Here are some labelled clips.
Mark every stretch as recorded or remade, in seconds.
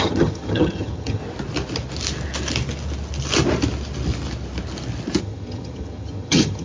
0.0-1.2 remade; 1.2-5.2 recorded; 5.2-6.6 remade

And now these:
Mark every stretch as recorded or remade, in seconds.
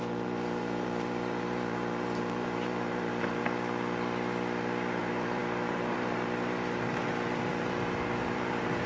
0.0-3.4 remade; 3.4-5.0 recorded; 5.0-8.9 remade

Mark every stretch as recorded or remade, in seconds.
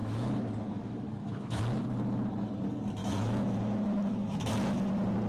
0.0-1.6 remade; 1.6-3.0 recorded; 3.0-4.8 remade; 4.8-5.3 recorded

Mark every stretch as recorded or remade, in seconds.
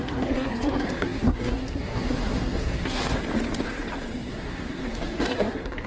0.0-3.0 remade; 3.0-4.3 recorded; 4.3-5.9 remade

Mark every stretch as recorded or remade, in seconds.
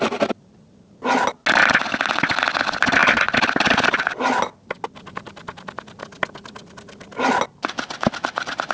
0.0-8.7 recorded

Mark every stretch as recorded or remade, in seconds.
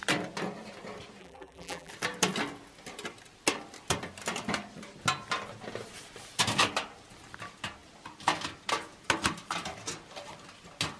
0.0-1.2 recorded; 1.2-1.9 remade; 1.9-11.0 recorded